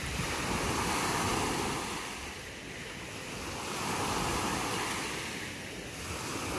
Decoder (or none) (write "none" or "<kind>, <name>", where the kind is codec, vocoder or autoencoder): none